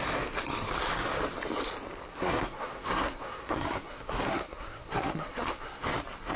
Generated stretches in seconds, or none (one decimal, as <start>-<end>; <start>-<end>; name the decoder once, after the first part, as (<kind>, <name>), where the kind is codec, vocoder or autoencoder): 2.1-5.9 (codec, SNAC)